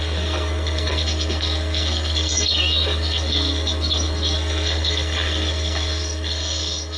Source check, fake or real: fake